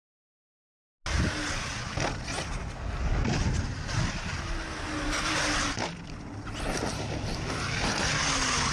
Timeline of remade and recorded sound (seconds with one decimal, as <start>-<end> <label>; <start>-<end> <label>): 0.0-8.7 recorded